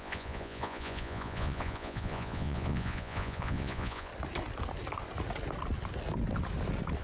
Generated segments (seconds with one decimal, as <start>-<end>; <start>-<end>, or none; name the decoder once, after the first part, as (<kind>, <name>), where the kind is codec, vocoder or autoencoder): 0.0-4.1 (vocoder, Vocos)